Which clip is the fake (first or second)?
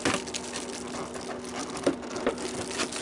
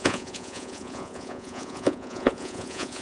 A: second